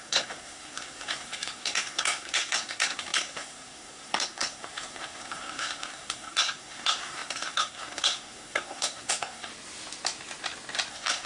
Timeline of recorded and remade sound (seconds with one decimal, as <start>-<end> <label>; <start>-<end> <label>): 0.0-9.5 remade; 9.5-10.9 recorded; 10.9-11.3 remade